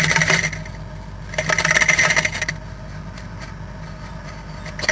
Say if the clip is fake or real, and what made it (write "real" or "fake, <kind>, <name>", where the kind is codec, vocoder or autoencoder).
real